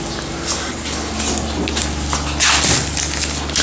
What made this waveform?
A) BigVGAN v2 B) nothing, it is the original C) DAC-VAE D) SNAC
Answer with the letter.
B